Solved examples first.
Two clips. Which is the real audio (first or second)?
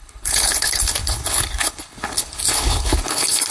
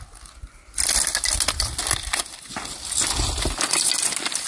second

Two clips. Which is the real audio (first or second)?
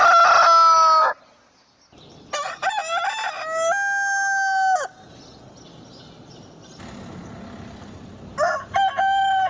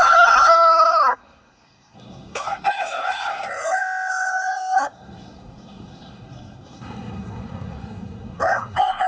first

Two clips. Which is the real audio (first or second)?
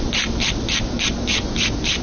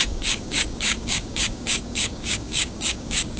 first